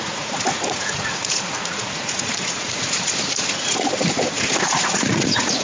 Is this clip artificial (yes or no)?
yes